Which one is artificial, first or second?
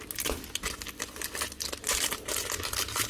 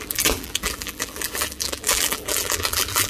second